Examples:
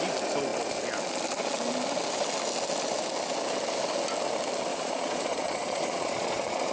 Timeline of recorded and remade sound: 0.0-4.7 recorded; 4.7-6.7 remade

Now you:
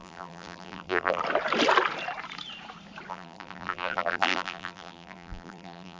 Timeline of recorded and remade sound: 0.0-1.2 remade; 1.2-3.1 recorded; 3.1-6.0 remade

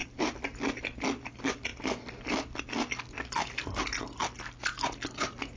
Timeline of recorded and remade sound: 0.0-5.6 recorded

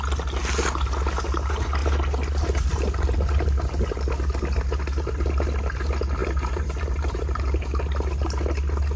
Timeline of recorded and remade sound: 0.0-6.2 recorded; 6.2-7.6 remade; 7.6-9.0 recorded

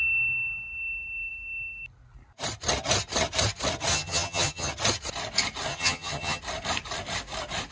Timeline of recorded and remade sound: 0.0-3.9 recorded; 3.9-4.7 remade; 4.7-5.7 recorded; 5.7-6.4 remade; 6.4-7.7 recorded

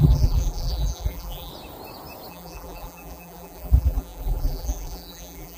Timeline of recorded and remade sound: 0.0-1.5 remade; 1.5-2.3 recorded; 2.3-5.6 remade